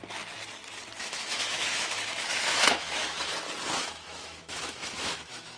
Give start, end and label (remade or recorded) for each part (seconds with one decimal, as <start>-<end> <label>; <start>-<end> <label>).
0.0-1.0 recorded; 1.0-3.3 remade; 3.3-3.8 recorded; 3.8-5.6 remade